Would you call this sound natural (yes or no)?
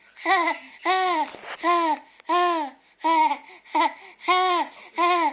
yes